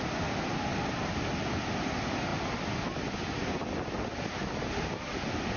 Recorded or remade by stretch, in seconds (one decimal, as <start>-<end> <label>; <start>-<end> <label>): 0.0-5.6 recorded